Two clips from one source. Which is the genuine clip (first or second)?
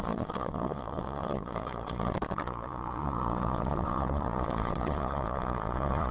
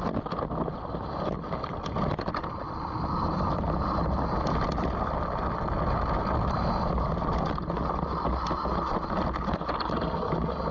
second